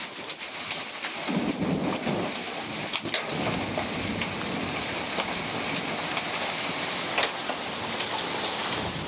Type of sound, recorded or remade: recorded